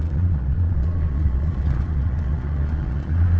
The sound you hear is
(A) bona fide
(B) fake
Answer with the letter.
B